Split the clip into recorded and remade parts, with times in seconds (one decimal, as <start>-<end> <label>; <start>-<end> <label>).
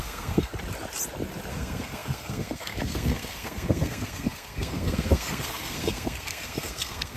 0.0-0.5 remade; 0.5-1.5 recorded; 1.5-7.2 remade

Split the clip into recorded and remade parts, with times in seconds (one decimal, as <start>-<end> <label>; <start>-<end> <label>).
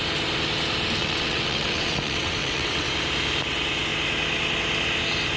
0.0-1.0 recorded; 1.0-2.9 remade; 2.9-5.4 recorded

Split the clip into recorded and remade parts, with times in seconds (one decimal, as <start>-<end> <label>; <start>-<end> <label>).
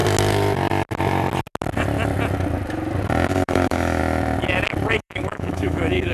0.0-3.3 recorded; 3.3-4.0 remade; 4.0-4.9 recorded; 4.9-6.1 remade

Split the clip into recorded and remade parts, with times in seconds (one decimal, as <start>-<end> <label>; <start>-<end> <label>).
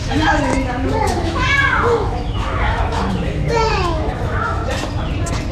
0.0-4.6 remade; 4.6-5.5 recorded